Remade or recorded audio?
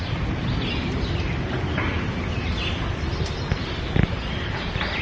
recorded